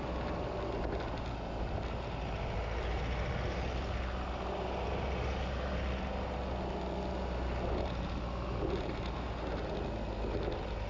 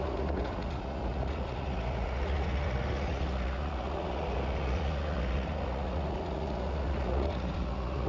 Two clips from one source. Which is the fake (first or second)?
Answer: second